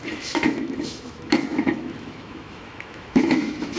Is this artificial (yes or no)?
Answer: yes